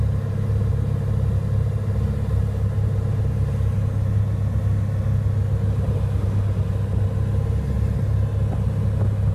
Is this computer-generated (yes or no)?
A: no